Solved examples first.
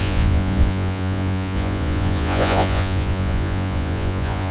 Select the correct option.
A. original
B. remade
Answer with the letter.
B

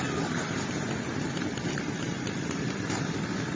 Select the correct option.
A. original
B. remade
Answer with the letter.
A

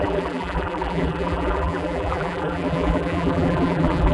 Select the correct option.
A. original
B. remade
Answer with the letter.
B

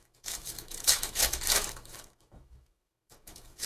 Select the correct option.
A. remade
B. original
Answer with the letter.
A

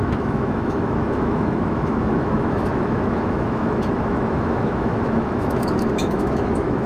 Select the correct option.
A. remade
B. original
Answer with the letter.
A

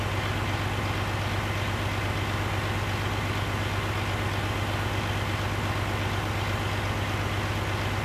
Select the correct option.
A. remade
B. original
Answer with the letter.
B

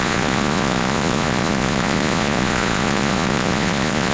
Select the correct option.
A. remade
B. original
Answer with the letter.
A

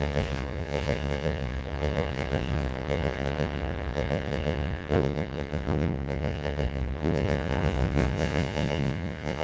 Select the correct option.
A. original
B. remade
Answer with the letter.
B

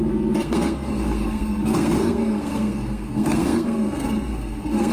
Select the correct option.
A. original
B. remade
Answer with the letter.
B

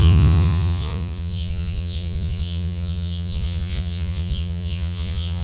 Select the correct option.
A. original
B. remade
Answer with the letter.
B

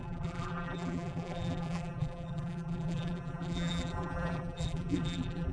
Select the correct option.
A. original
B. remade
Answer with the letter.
B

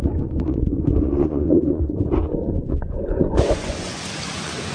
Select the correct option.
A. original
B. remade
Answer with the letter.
B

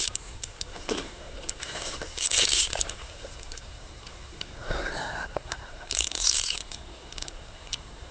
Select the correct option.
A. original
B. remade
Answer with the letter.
B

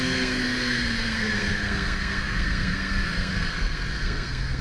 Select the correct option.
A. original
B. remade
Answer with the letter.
B